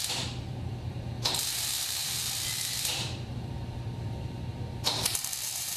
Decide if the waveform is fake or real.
fake